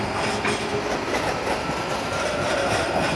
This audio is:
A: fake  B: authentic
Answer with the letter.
B